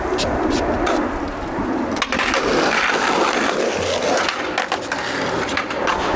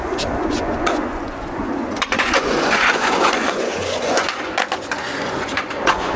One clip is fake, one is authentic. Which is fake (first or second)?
second